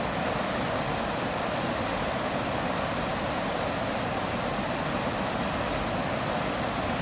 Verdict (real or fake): real